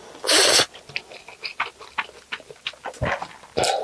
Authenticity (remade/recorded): recorded